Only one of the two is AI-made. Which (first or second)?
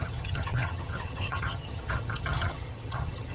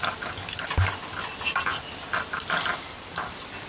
first